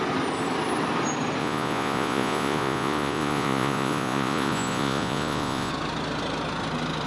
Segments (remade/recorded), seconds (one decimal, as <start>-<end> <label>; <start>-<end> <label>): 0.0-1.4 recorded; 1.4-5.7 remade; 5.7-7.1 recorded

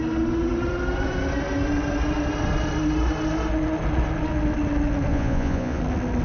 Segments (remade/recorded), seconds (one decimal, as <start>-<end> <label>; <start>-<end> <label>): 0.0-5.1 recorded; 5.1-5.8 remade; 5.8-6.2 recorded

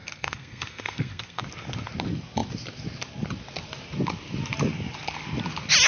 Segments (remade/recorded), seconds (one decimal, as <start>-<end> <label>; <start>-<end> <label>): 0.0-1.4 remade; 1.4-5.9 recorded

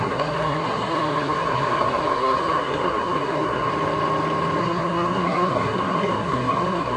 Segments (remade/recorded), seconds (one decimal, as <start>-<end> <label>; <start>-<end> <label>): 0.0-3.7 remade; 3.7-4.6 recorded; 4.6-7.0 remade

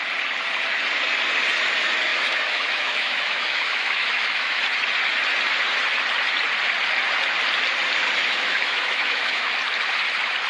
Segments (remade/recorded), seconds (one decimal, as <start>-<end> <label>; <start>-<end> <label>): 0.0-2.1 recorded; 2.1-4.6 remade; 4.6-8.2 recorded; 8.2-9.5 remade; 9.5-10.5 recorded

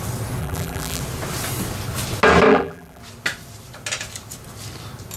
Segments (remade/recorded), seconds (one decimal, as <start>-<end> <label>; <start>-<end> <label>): 0.0-0.4 recorded; 0.4-1.0 remade; 1.0-2.5 recorded; 2.5-3.0 remade; 3.0-5.2 recorded

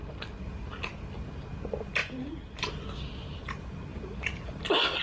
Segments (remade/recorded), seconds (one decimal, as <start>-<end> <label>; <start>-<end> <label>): 0.0-2.0 recorded; 2.0-2.6 remade; 2.6-3.9 recorded; 3.9-4.6 remade; 4.6-5.0 recorded